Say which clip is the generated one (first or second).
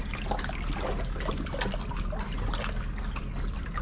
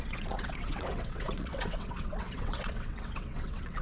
second